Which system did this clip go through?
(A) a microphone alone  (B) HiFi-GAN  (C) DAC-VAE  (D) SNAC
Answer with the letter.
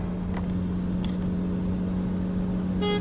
A